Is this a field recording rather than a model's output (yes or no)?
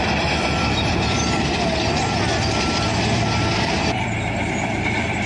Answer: no